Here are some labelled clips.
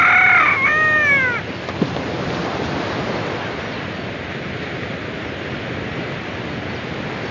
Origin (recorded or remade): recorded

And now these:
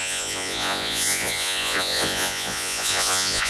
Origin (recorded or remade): remade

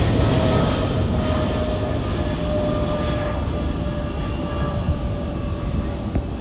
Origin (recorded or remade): recorded